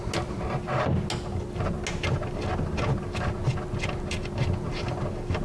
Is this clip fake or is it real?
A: real